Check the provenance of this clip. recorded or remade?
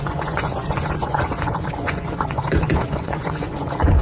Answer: remade